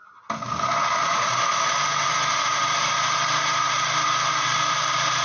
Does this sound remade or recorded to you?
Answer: recorded